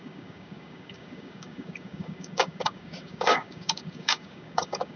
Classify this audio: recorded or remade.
remade